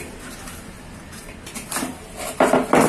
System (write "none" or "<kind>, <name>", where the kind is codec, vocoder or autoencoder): none